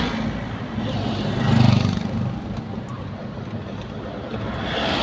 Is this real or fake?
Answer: real